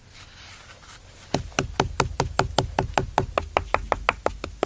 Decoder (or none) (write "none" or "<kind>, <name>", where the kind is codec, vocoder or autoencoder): none